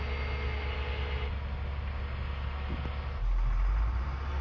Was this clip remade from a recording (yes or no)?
no